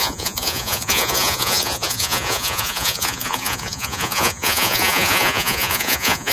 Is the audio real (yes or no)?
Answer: no